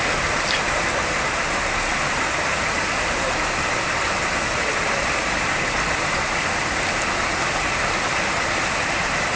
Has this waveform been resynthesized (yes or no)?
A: no